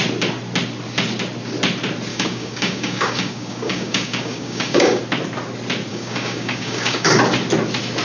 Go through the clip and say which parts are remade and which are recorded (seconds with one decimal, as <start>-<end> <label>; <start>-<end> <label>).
0.0-2.1 recorded; 2.1-5.0 remade; 5.0-5.9 recorded; 5.9-7.1 remade; 7.1-8.0 recorded